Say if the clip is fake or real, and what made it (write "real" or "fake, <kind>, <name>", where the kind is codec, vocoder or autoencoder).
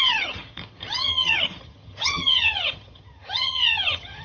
fake, vocoder, HiFi-GAN